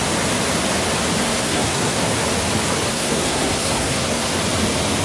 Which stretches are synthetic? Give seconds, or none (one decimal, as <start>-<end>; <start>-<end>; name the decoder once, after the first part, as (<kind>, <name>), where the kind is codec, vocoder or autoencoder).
1.2-2.0 (codec, SNAC); 2.9-4.3

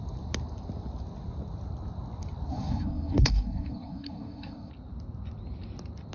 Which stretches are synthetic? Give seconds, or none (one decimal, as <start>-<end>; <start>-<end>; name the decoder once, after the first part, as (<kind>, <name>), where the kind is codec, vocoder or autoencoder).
2.5-4.7 (codec, SNAC)